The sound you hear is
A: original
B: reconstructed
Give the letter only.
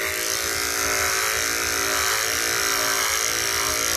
A